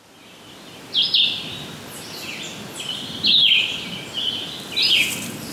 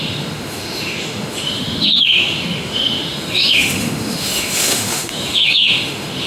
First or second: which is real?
first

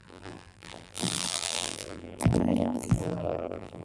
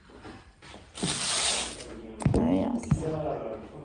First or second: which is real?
second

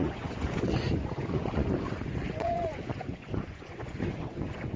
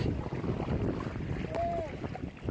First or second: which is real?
second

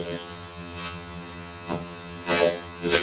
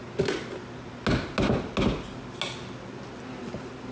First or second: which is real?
second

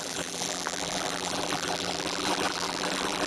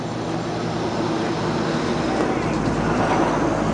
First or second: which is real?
second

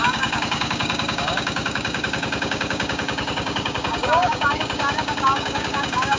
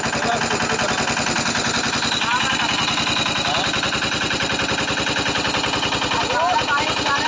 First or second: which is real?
second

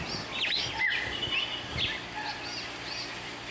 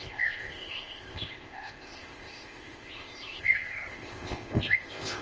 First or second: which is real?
first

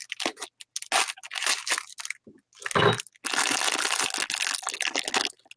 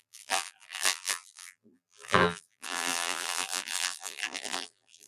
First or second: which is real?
first